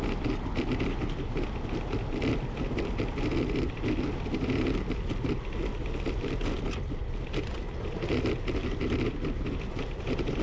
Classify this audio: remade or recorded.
recorded